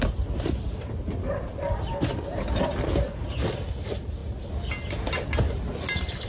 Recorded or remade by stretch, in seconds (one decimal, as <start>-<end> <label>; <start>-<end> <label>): 0.0-6.3 recorded

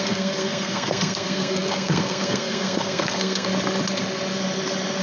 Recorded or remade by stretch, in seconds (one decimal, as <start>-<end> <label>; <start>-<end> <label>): 0.0-3.5 remade; 3.5-5.0 recorded

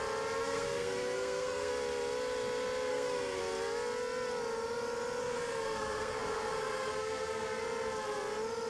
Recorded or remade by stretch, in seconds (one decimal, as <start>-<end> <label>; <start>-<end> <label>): 0.0-0.4 recorded; 0.4-1.7 remade; 1.7-2.9 recorded; 2.9-3.4 remade; 3.4-5.2 recorded; 5.2-7.6 remade; 7.6-8.7 recorded